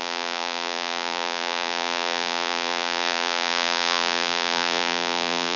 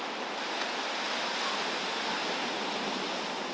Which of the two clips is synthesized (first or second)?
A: first